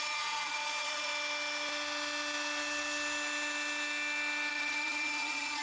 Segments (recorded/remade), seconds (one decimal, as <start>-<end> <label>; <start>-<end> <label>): 0.0-1.1 remade; 1.1-4.5 recorded; 4.5-5.6 remade